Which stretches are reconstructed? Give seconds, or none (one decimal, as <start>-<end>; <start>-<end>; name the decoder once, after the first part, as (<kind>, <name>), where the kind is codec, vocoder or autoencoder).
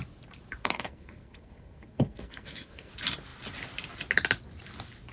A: 0.6-2.9 (codec, SNAC)